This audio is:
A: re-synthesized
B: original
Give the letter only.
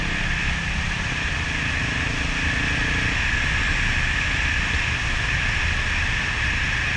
B